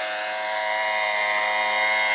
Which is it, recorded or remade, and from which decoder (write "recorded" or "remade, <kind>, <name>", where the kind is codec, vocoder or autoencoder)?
recorded